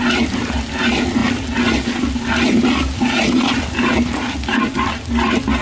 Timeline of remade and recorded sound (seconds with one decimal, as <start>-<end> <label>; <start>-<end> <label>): 0.0-5.6 recorded